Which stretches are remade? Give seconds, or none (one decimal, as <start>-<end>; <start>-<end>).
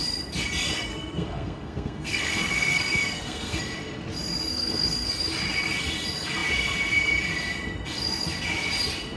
0.9-3.6; 4.5-5.2